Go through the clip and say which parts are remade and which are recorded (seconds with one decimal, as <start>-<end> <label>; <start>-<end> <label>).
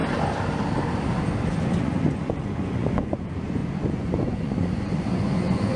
0.0-1.4 recorded; 1.4-5.8 remade